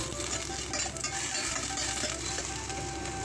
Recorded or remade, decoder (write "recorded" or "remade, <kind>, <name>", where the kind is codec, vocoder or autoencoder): recorded